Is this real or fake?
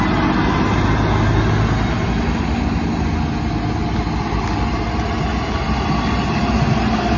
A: real